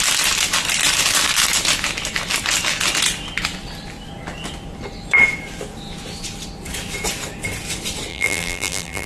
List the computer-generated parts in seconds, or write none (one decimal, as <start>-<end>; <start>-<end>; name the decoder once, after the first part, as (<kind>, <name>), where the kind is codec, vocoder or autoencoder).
8.1-9.1 (vocoder, BigVGAN v2)

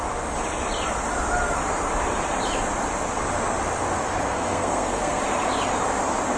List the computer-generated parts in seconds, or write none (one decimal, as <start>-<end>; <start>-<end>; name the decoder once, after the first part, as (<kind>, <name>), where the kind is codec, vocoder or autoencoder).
4.3-5.2 (codec, SNAC)